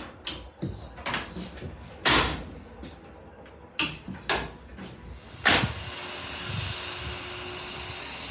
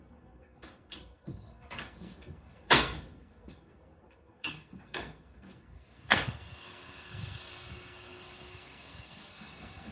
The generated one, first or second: second